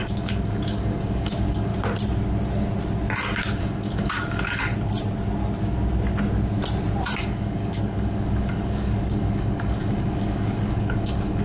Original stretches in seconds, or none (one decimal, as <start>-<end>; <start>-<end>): 1.7-3.6; 4.7-7.2